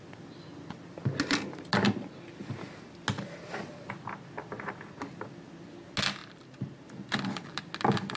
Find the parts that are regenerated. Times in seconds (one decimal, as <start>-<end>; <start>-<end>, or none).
none